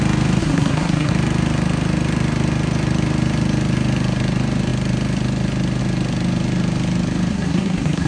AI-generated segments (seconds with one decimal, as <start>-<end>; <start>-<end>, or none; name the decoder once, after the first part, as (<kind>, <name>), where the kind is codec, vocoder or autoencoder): 0.4-1.1 (codec, SNAC); 7.3-8.1